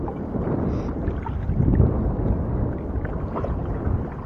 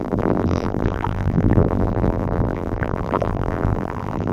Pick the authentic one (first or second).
first